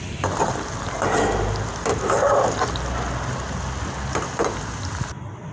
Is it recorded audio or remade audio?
recorded